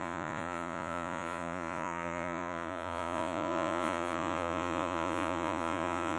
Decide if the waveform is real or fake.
fake